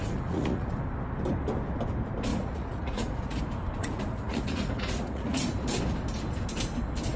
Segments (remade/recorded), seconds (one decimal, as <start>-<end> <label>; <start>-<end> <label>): 0.0-0.7 remade; 0.7-2.3 recorded; 2.3-3.4 remade; 3.4-3.8 recorded; 3.8-5.4 remade; 5.4-7.2 recorded